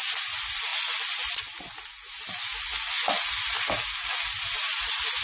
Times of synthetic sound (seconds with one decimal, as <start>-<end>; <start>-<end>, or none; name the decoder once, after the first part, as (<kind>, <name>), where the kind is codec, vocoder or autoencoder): 2.7-3.5 (vocoder, Vocos)